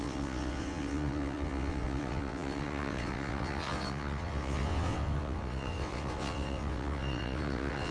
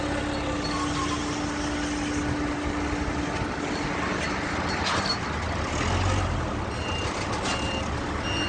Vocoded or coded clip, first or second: first